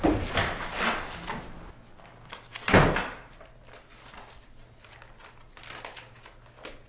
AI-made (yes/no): no